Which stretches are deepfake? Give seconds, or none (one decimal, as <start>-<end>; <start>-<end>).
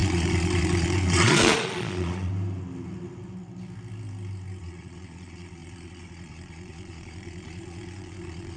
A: 0.0-2.3; 4.6-8.6